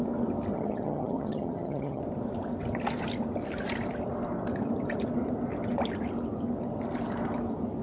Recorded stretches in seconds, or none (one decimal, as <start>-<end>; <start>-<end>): 0.0-0.5; 2.0-7.8

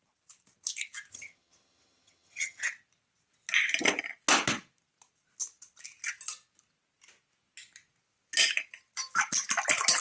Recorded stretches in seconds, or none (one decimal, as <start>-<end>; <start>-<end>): 0.0-1.1; 2.7-10.0

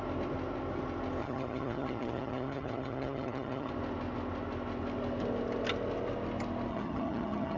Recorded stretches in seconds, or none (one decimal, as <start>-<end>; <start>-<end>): 0.0-1.2; 3.7-6.7

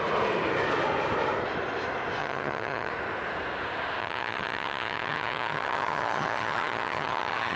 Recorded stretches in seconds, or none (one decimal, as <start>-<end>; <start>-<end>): 0.0-2.2; 2.9-4.0

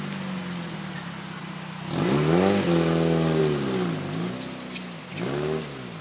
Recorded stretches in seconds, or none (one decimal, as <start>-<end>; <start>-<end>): 0.0-6.0

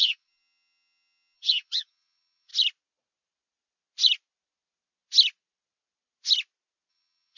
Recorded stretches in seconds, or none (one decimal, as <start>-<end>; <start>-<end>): 2.5-6.9

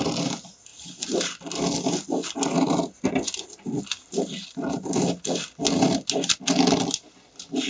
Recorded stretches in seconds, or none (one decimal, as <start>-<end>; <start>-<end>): 0.0-7.7